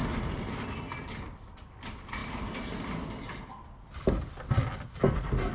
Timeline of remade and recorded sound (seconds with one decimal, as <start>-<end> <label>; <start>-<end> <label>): 0.0-5.5 recorded